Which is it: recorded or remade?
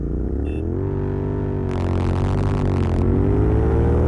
recorded